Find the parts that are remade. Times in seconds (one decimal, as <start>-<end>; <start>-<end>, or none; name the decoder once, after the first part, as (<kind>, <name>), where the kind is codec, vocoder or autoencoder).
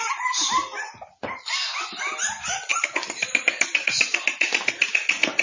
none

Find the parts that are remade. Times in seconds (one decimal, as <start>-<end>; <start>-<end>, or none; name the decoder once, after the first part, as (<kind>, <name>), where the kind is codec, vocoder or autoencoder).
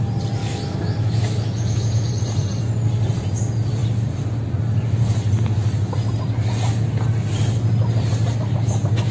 0.4-2.1 (autoencoder, DAC-VAE)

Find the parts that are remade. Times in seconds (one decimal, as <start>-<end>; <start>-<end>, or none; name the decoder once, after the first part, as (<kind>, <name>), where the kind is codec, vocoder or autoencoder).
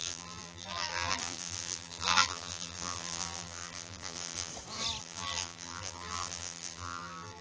0.0-4.5 (vocoder, BigVGAN v2); 5.0-7.4